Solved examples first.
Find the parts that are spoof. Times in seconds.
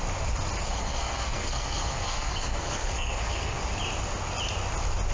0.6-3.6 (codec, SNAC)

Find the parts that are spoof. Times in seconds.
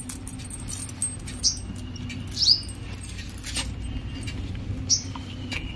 none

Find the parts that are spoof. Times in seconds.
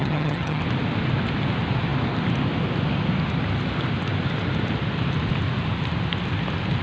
0.0-0.6 (vocoder, HiFi-GAN)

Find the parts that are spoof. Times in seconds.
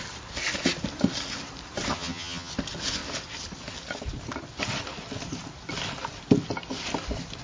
1.9-2.5 (vocoder, HiFi-GAN)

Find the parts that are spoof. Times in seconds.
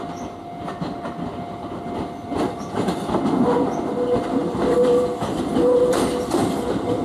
4.4-7.0 (vocoder, BigVGAN v2)